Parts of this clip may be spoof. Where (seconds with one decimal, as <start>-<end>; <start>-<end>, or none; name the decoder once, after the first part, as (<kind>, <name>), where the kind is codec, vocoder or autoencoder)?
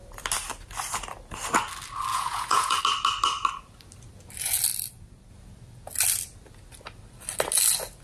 2.1-2.8 (vocoder, Vocos)